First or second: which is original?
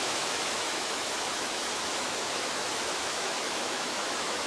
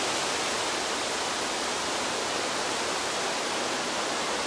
second